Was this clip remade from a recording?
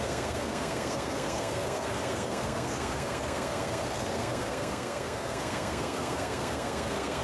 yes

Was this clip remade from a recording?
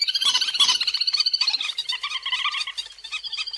no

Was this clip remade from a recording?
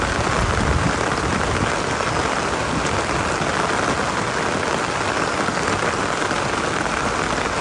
no